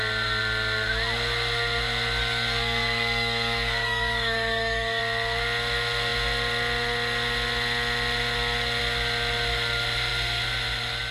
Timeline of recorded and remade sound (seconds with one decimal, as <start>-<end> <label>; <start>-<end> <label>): 0.0-2.2 recorded; 2.2-5.0 remade; 5.0-11.1 recorded